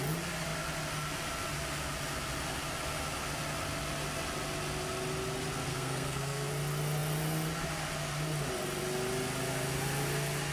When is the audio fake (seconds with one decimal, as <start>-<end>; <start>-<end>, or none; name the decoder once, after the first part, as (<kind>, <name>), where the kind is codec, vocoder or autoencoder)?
5.7-6.5 (codec, SNAC)